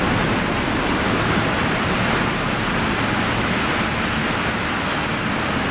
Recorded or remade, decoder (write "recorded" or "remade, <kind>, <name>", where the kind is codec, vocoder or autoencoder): recorded